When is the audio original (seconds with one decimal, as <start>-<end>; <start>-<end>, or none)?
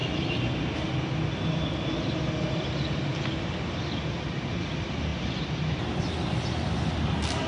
0.0-7.5